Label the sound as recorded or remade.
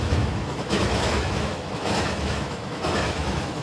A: remade